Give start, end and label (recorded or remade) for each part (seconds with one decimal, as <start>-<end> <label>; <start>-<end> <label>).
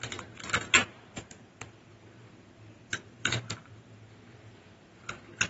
0.0-0.8 recorded; 0.8-4.1 remade; 4.1-5.5 recorded